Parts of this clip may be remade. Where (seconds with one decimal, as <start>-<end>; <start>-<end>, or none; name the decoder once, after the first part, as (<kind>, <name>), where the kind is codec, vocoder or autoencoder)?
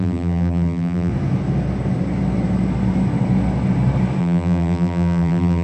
0.0-1.1 (vocoder, BigVGAN v2); 4.2-5.6